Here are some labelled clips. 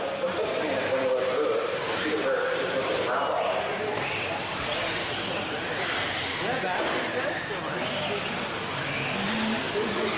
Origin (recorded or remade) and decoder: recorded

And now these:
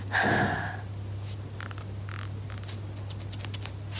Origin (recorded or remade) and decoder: recorded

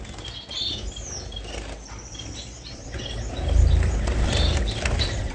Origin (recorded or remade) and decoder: recorded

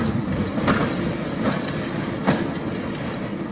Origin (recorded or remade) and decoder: recorded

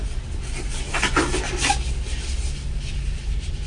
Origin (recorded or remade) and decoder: recorded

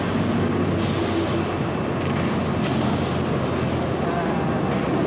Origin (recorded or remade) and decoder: recorded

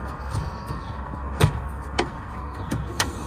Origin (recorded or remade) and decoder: remade, codec, SNAC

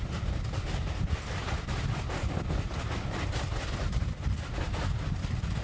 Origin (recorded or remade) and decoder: recorded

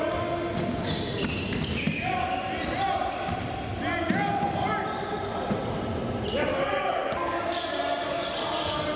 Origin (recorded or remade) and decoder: recorded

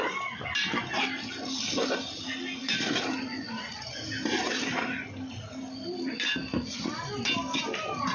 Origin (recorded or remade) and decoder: recorded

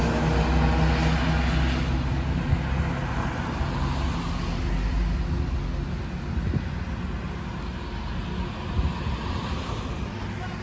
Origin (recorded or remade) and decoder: recorded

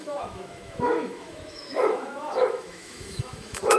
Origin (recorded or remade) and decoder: remade, autoencoder, DAC-VAE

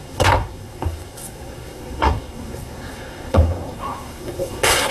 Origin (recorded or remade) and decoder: remade, codec, SNAC